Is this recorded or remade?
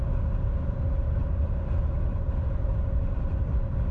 recorded